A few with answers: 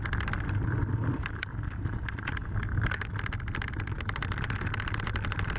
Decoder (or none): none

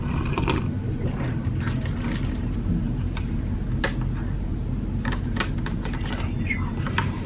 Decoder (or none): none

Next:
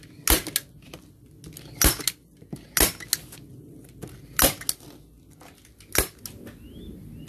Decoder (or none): none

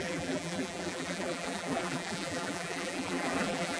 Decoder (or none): vocoder, BigVGAN v2